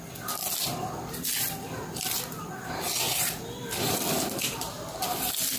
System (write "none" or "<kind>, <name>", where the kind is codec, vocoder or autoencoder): none